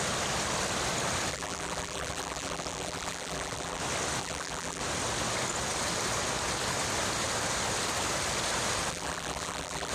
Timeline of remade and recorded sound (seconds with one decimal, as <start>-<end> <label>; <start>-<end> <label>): 0.0-1.3 recorded; 1.3-3.8 remade; 3.8-4.2 recorded; 4.2-4.8 remade; 4.8-8.9 recorded; 8.9-9.9 remade